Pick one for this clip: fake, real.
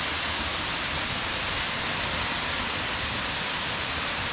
real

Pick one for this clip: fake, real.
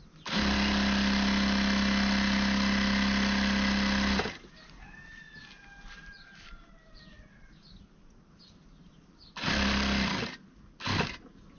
real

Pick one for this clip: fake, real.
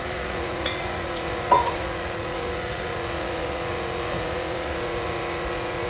fake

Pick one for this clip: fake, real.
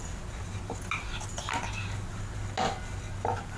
real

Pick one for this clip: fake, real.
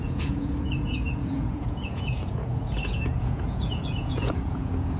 fake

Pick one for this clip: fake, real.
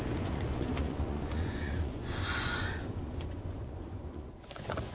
fake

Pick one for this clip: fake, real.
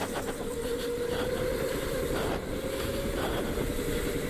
real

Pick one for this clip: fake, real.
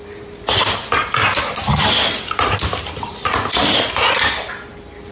real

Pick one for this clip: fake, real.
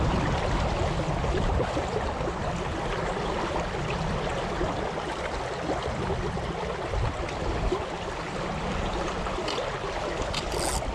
real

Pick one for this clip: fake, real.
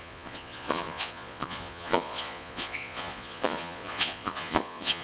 fake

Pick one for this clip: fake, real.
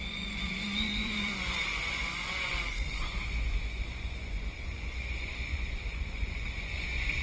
fake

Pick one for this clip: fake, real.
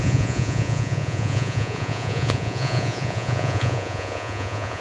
fake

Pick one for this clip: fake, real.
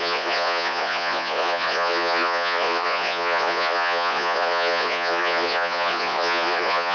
fake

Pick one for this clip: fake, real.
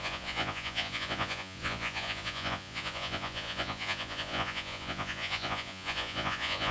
fake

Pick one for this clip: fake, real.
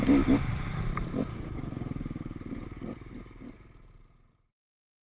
real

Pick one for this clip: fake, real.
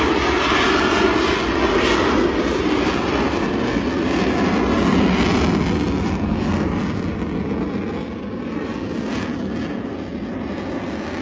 real